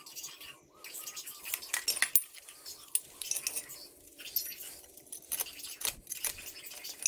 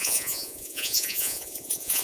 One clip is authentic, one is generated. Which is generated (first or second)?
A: second